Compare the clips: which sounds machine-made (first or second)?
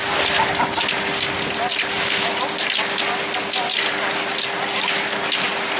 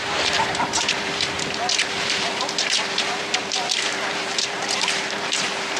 second